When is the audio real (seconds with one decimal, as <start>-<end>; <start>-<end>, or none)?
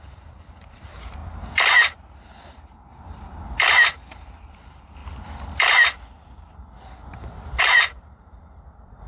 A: 1.2-4.1; 5.0-7.6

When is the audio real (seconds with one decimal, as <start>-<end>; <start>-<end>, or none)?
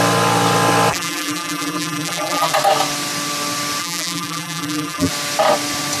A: 0.0-0.9; 2.5-3.8; 5.1-6.0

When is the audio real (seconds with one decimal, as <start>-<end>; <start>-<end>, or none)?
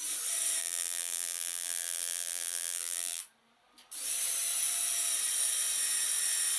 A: 0.0-0.6; 3.2-6.6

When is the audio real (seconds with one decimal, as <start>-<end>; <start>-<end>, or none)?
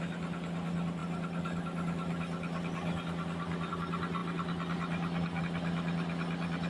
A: 0.0-6.7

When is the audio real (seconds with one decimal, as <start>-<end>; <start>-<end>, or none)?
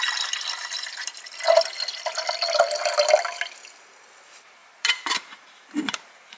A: 0.0-0.6; 1.2-4.6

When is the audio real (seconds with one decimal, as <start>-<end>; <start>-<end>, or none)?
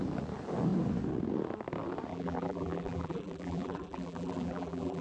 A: 0.0-2.1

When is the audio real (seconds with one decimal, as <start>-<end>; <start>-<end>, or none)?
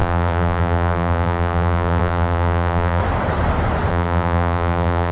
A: 3.0-3.9